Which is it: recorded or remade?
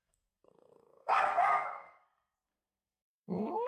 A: remade